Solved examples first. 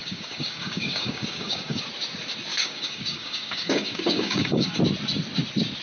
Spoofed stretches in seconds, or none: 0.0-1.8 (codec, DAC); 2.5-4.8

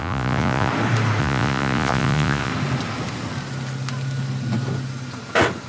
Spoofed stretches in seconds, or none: 0.0-0.7 (vocoder, Vocos); 1.2-2.5

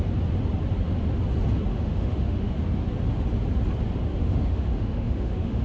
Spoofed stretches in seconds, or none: 1.7-2.5 (autoencoder, DAC-VAE); 4.1-5.6

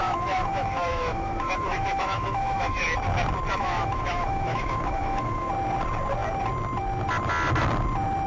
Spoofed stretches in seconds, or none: 0.0-2.8 (autoencoder, DAC-VAE); 3.6-5.5